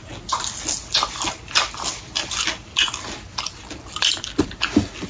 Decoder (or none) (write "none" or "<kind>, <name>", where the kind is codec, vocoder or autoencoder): none